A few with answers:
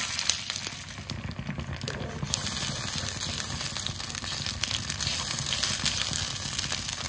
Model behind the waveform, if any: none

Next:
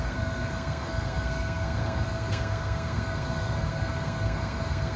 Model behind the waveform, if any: codec, SNAC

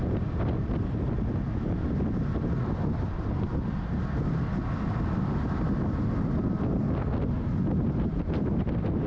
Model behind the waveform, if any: none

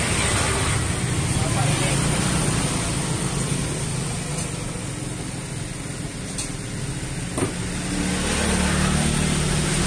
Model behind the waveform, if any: none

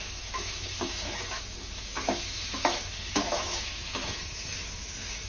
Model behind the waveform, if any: autoencoder, DAC-VAE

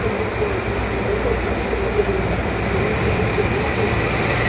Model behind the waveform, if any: none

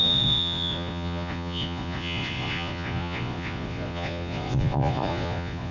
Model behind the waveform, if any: vocoder, Vocos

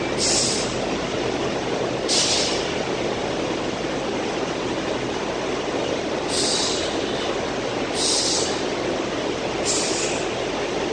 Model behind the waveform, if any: none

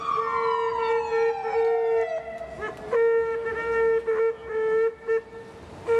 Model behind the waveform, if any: none